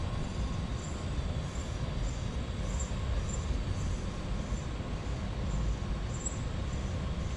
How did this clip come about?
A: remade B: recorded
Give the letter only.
B